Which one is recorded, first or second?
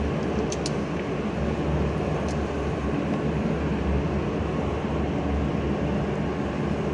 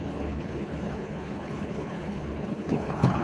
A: first